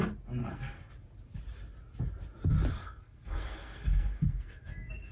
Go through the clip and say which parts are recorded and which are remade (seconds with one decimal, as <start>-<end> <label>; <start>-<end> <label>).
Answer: 0.0-0.4 recorded; 0.4-0.9 remade; 0.9-2.7 recorded; 2.7-5.1 remade